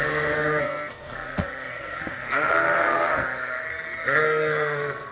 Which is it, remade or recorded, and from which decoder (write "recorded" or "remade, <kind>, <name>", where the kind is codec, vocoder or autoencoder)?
remade, codec, SNAC